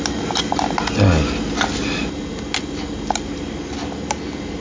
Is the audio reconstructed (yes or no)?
no